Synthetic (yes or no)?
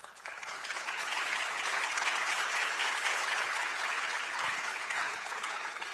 yes